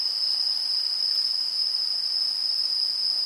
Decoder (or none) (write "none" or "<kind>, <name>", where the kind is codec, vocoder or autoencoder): none